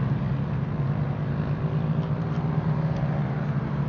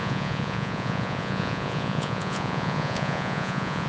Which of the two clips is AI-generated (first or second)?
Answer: second